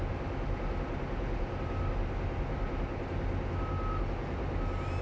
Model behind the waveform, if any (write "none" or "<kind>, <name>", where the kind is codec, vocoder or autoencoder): none